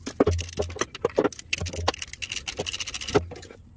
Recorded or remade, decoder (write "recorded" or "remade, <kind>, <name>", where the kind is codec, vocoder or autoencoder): recorded